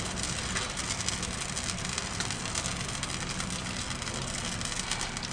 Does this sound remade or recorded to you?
recorded